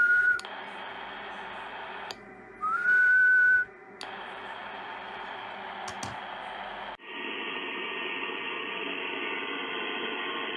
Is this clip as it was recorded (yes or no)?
yes